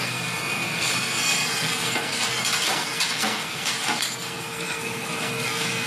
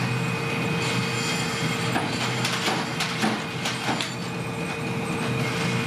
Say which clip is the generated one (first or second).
first